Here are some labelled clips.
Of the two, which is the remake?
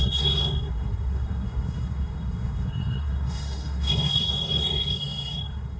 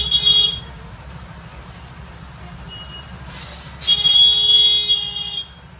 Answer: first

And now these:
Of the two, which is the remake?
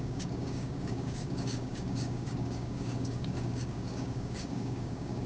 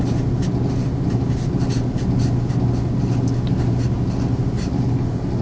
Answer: first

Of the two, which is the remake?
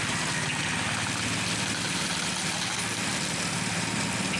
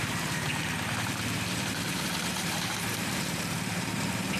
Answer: second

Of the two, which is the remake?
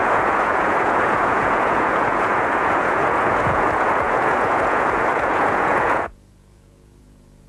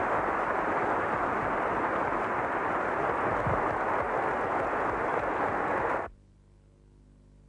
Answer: first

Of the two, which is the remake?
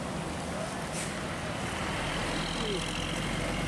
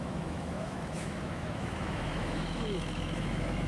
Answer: second